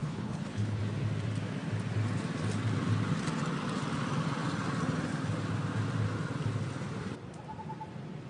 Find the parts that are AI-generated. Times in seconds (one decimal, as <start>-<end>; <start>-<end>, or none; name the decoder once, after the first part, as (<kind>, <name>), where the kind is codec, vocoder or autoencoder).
0.0-0.8 (codec, HILCodec)